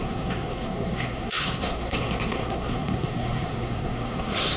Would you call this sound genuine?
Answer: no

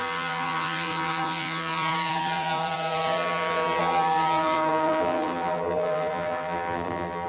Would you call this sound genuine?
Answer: no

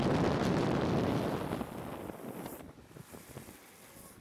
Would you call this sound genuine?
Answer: yes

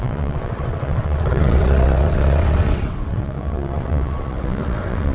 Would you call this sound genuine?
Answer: no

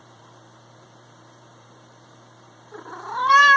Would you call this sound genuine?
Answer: no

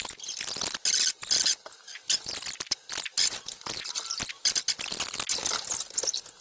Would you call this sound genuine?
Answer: yes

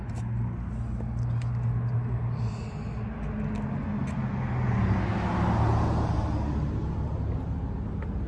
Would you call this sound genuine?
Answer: yes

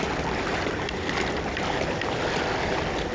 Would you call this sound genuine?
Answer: yes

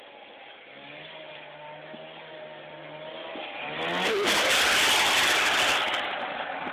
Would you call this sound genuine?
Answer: yes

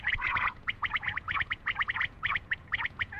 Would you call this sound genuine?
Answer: no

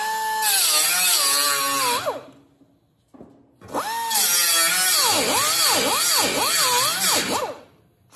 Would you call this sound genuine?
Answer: yes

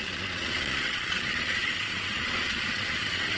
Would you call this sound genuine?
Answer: no